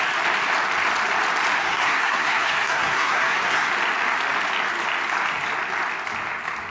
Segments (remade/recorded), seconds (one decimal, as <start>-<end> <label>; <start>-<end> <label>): 0.0-1.6 recorded; 1.6-3.7 remade; 3.7-6.7 recorded